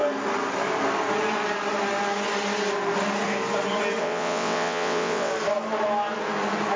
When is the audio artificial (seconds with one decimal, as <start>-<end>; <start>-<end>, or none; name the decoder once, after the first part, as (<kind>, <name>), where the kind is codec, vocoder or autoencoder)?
4.0-5.3 (vocoder, WaveNeXt)